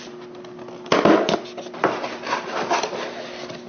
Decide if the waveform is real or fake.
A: real